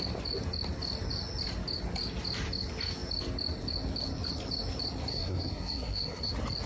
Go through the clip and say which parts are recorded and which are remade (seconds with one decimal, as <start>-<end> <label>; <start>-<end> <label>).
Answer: 0.0-5.1 recorded; 5.1-6.3 remade; 6.3-6.7 recorded